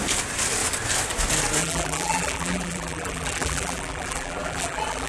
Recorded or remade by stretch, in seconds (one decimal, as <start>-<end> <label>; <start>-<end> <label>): 0.0-1.6 recorded; 1.6-5.1 remade